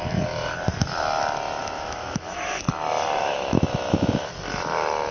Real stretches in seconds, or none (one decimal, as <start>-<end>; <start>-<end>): 0.0-1.6; 2.6-3.2; 4.3-5.1